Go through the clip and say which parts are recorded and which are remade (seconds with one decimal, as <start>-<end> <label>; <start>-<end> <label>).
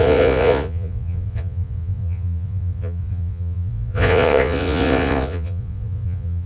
0.0-6.5 remade